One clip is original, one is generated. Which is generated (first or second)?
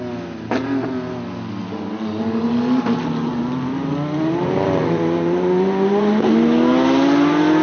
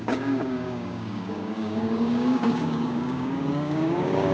second